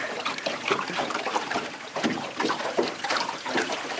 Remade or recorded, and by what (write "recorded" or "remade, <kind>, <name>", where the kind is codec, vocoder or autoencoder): remade, vocoder, BigVGAN v2